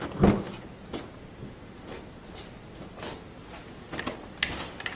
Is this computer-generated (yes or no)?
no